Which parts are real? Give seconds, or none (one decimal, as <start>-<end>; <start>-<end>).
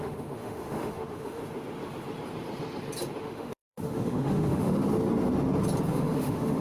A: 1.4-3.2; 4.8-5.9